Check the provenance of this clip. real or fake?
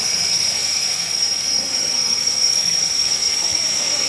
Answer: fake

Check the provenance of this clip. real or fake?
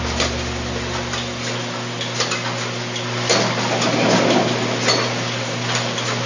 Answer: real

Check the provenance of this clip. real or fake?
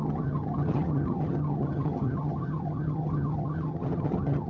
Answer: fake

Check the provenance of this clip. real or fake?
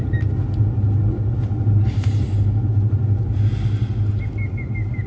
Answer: real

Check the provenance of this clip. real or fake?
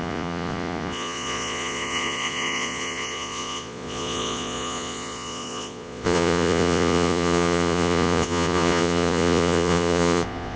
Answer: fake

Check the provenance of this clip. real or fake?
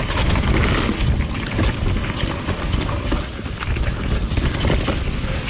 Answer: real